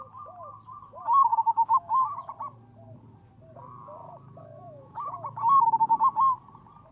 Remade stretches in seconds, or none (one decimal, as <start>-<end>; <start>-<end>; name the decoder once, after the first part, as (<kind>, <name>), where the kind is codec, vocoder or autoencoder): 1.3-2.3 (autoencoder, DAC-VAE); 4.4-5.9